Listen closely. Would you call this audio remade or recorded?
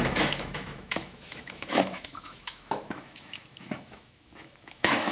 remade